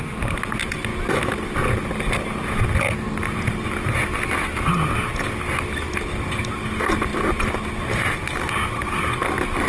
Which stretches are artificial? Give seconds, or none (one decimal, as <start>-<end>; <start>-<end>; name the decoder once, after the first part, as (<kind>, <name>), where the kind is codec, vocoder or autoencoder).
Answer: none